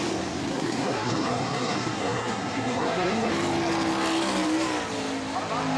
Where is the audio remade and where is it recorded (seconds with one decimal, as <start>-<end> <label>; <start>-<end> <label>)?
0.0-0.5 recorded; 0.5-3.3 remade; 3.3-5.8 recorded